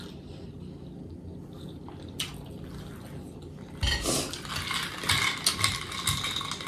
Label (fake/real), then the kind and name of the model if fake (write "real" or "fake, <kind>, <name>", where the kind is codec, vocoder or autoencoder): real